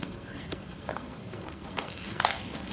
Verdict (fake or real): fake